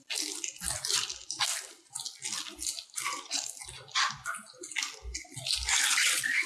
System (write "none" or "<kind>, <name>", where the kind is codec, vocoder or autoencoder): none